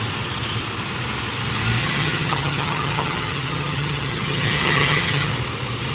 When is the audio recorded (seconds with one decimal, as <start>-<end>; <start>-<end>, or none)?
0.0-1.8; 5.3-5.9